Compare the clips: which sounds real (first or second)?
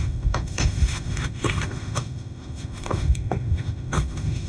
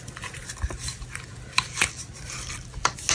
second